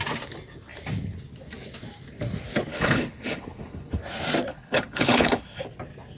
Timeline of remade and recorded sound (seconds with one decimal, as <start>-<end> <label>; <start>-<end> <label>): 0.0-2.7 recorded; 2.7-4.0 remade; 4.0-4.5 recorded; 4.5-5.6 remade; 5.6-6.2 recorded